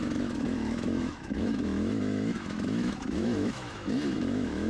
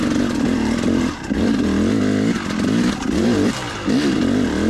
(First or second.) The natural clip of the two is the second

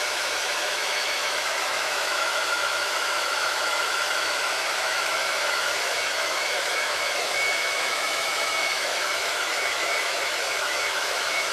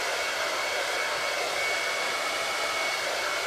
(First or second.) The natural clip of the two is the second